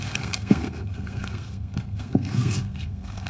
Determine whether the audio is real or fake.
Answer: fake